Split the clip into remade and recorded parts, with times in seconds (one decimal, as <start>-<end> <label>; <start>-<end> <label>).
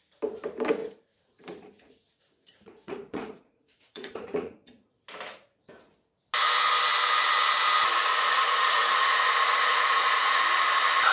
0.0-0.8 recorded; 0.8-4.9 remade; 4.9-8.0 recorded; 8.0-10.4 remade; 10.4-11.1 recorded